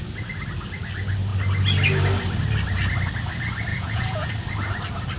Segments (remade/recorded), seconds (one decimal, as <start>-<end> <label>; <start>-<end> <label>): 0.0-3.7 recorded; 3.7-4.3 remade; 4.3-5.2 recorded